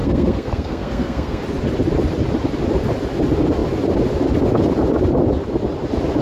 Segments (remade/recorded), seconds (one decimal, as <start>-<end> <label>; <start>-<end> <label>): 0.0-1.4 remade; 1.4-6.2 recorded